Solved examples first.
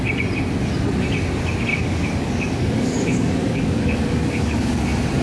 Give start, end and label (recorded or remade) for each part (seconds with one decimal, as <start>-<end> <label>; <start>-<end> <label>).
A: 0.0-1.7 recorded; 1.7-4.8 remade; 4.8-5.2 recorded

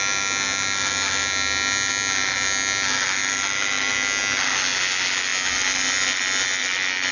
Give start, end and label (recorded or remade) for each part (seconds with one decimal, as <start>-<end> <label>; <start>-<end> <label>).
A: 0.0-7.1 recorded

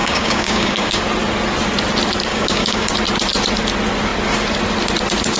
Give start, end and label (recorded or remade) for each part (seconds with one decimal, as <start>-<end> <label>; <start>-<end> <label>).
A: 0.0-1.0 remade; 1.0-2.3 recorded; 2.3-2.9 remade; 2.9-5.4 recorded

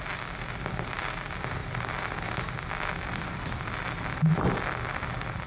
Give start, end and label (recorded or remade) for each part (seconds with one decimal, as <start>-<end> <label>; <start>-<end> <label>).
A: 0.0-5.5 recorded